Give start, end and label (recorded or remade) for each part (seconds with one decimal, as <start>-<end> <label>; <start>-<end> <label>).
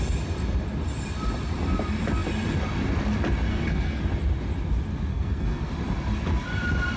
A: 0.0-3.5 recorded; 3.5-4.0 remade; 4.0-5.1 recorded; 5.1-5.7 remade; 5.7-7.0 recorded